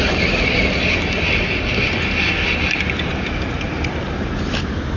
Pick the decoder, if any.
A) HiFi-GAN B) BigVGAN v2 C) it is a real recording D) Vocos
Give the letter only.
C